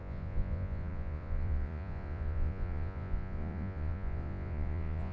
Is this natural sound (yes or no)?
no